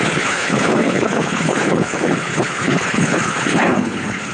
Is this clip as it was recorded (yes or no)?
no